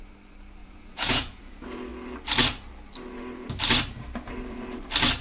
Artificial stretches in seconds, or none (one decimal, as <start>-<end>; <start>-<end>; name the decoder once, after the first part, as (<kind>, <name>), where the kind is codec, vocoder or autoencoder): 0.6-1.4 (vocoder, Vocos)

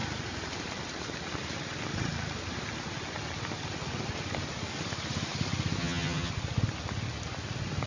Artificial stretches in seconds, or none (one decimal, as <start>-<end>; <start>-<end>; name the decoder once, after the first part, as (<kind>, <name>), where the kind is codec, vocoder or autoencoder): 5.8-6.3 (vocoder, HiFi-GAN)

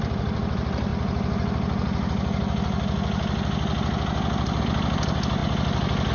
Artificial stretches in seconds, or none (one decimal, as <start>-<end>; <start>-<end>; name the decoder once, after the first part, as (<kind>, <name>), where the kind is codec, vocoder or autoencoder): 0.0-0.9 (vocoder, BigVGAN v2); 4.6-5.4

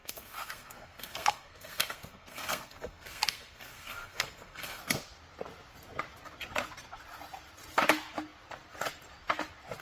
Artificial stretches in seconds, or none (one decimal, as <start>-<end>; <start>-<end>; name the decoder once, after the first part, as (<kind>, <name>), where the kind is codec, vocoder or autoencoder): 0.0-4.8 (codec, SNAC)